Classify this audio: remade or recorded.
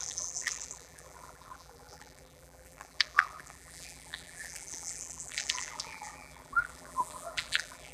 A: remade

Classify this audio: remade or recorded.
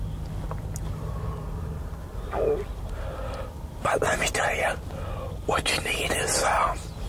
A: recorded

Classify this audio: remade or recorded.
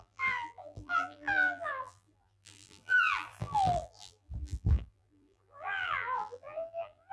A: remade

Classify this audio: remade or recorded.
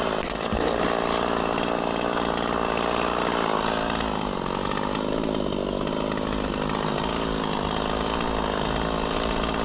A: recorded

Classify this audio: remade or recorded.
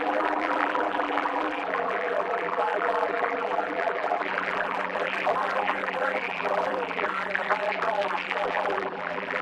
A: remade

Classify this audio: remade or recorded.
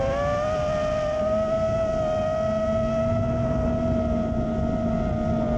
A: recorded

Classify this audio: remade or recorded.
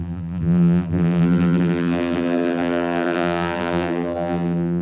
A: remade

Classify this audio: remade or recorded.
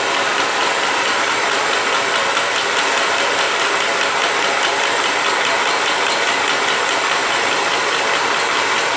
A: remade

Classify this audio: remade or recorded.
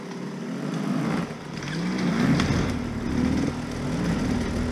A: recorded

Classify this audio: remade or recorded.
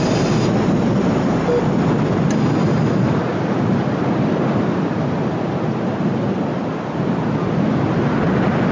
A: recorded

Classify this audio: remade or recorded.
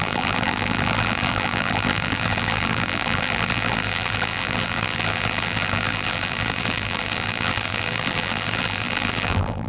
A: remade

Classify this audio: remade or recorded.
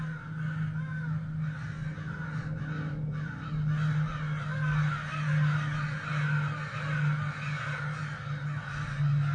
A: recorded